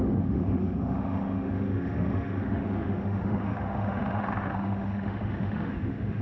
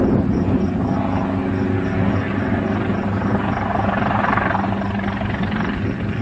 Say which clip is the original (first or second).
second